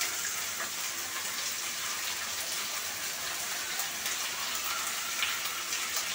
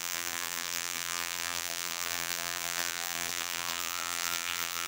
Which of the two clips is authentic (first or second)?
first